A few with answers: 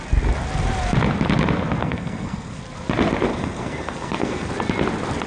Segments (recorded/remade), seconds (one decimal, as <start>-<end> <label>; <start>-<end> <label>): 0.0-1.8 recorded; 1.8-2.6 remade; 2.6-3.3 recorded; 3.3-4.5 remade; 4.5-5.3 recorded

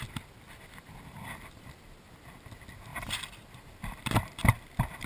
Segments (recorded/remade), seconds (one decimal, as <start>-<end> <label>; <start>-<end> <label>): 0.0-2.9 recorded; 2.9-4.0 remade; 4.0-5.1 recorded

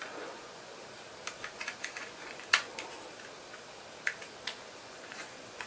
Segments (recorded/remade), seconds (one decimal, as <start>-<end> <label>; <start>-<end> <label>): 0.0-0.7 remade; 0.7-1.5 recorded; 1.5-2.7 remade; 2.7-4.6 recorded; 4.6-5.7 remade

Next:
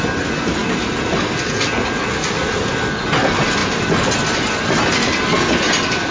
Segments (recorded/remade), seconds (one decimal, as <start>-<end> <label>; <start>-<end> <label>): 0.0-6.1 recorded

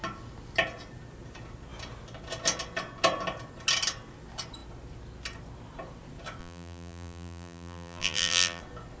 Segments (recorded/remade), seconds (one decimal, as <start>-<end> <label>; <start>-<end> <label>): 0.0-6.4 recorded; 6.4-8.6 remade; 8.6-9.0 recorded

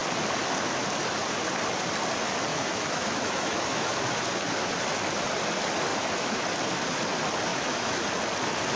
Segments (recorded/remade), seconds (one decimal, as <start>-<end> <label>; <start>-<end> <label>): 0.0-2.5 recorded; 2.5-3.9 remade; 3.9-5.9 recorded; 5.9-6.4 remade; 6.4-7.5 recorded; 7.5-8.0 remade; 8.0-8.8 recorded

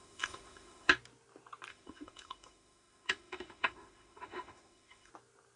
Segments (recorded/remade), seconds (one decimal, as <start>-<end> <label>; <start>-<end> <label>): 0.0-0.9 remade; 0.9-1.7 recorded; 1.7-5.1 remade; 5.1-5.6 recorded